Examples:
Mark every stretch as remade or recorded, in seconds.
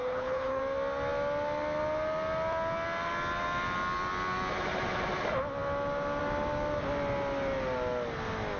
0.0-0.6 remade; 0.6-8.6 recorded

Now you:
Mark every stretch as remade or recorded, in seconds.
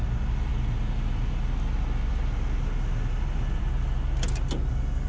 0.0-5.1 recorded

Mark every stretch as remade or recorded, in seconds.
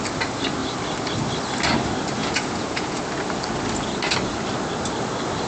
0.0-2.2 recorded; 2.2-3.0 remade; 3.0-5.5 recorded